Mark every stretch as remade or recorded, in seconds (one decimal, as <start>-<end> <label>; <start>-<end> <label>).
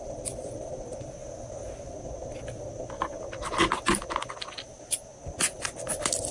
0.0-6.3 recorded